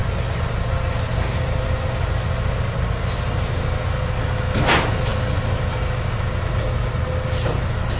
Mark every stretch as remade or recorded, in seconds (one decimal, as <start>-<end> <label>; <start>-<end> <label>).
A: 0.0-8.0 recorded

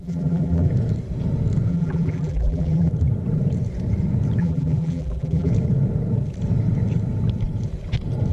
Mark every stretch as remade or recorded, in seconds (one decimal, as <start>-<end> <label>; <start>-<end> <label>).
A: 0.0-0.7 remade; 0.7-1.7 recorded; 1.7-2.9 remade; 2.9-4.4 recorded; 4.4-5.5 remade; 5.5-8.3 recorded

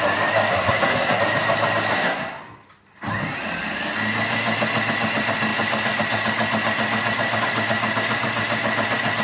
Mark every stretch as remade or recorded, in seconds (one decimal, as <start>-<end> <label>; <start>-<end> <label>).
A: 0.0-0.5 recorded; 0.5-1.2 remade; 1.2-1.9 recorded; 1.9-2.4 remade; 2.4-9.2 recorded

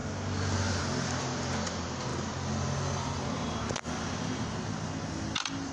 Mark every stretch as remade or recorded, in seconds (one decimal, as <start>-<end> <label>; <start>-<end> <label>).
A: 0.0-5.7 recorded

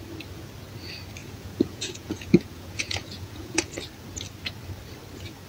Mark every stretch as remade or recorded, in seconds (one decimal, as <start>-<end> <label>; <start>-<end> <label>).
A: 0.0-1.2 recorded; 1.2-3.7 remade; 3.7-5.5 recorded

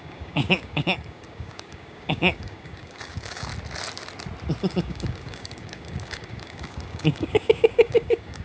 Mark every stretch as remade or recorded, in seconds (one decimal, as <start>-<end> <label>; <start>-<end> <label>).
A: 0.0-3.5 remade; 3.5-4.6 recorded; 4.6-8.4 remade

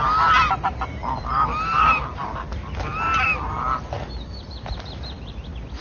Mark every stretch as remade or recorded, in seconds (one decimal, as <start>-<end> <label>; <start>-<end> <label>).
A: 0.0-5.8 recorded